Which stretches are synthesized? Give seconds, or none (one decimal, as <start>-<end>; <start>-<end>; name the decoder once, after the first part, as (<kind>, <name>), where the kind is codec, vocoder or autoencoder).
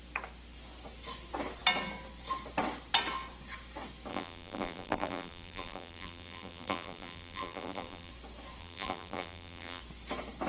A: 4.1-8.1 (vocoder, BigVGAN v2); 8.6-9.8